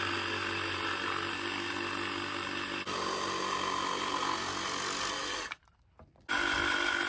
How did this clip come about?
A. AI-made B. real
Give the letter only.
B